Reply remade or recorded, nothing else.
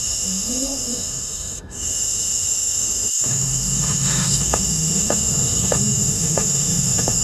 remade